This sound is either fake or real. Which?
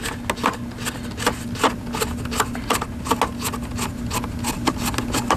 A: real